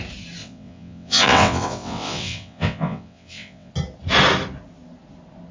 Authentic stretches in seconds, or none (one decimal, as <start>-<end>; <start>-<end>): 0.0-0.4; 3.7-5.5

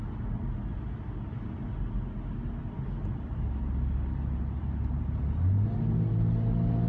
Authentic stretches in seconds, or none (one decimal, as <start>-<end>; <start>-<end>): 0.0-6.9

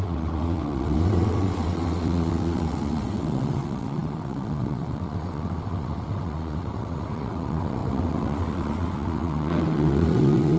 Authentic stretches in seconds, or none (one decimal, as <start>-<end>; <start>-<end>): none

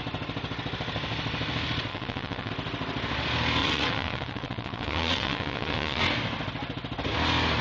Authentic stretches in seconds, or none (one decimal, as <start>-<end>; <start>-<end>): 0.0-1.9; 2.5-3.6; 6.0-7.6

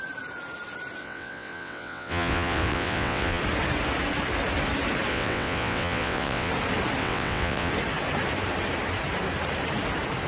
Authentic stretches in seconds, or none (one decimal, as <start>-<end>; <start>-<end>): 0.0-1.0; 3.4-5.1; 6.5-7.0; 7.7-10.3

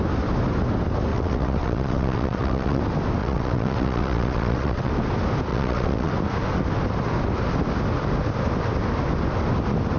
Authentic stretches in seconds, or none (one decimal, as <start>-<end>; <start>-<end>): 0.0-1.1; 2.8-3.2; 4.9-5.5; 6.1-10.0

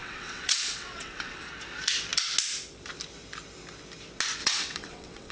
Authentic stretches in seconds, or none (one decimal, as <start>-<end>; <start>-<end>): 1.5-4.4